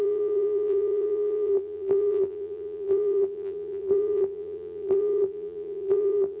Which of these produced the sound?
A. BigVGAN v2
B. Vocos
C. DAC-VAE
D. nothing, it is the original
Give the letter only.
A